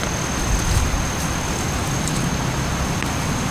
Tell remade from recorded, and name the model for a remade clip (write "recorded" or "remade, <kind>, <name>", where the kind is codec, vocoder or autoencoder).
recorded